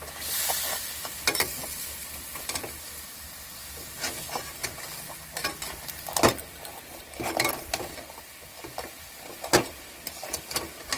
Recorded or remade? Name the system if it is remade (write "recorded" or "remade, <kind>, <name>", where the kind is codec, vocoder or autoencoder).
recorded